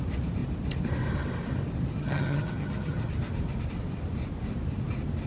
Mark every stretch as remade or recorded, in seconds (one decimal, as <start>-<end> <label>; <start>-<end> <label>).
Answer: 0.0-1.9 recorded; 1.9-3.1 remade; 3.1-5.3 recorded